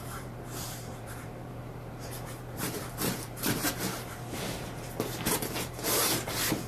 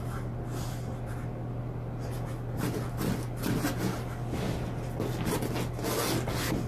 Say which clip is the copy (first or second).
first